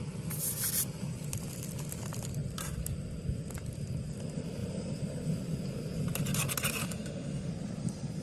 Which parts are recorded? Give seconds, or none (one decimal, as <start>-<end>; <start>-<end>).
0.0-6.8; 7.5-8.2

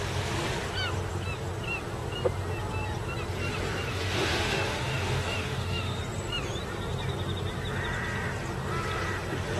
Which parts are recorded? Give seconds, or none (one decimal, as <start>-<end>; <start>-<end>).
0.0-3.9; 6.0-9.6

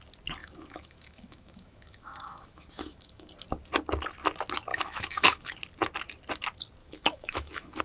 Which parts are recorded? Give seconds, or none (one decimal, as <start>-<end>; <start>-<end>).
0.0-0.4; 3.3-4.7; 5.6-6.8